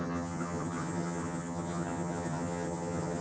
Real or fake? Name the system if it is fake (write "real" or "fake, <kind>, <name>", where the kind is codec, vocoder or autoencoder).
fake, vocoder, HiFi-GAN